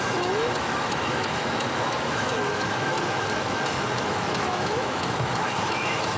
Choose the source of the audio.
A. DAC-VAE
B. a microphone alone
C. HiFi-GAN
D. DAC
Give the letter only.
A